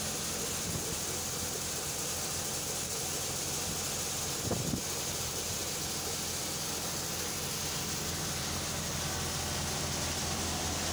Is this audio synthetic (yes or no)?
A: no